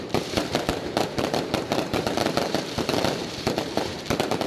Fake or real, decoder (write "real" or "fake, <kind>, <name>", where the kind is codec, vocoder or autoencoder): fake, vocoder, BigVGAN v2